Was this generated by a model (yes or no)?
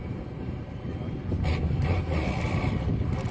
no